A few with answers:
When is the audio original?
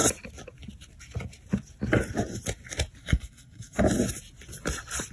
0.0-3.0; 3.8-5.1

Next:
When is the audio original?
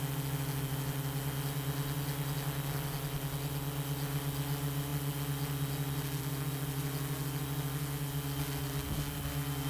0.0-9.7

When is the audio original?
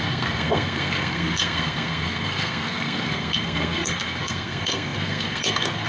none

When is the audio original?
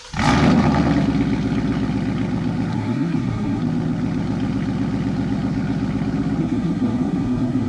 0.0-2.7; 3.6-6.4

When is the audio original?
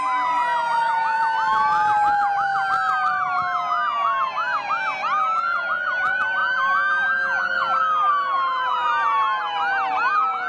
0.0-10.5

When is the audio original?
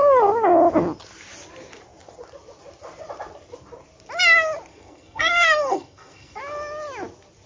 0.0-4.7; 6.4-7.5